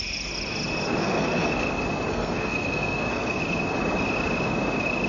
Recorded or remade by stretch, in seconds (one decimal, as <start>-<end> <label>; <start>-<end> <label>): 0.0-1.0 recorded; 1.0-1.7 remade; 1.7-2.1 recorded; 2.1-3.4 remade; 3.4-5.1 recorded